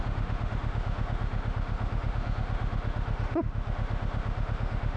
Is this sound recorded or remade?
remade